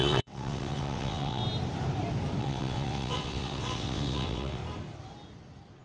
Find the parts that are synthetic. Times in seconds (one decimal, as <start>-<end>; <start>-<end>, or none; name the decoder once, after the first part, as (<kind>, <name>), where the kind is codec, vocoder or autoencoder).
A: 0.0-1.4 (vocoder, WaveNeXt); 2.4-4.6